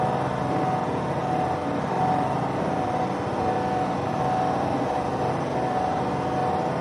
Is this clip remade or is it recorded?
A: recorded